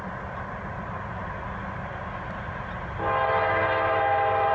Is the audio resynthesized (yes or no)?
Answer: no